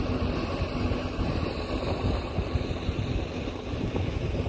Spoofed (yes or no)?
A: no